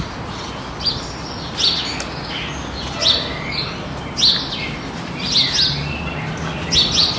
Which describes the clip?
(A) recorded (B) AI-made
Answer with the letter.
A